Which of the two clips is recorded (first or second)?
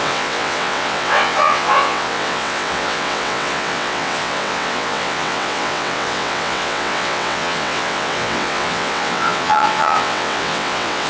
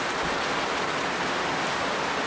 second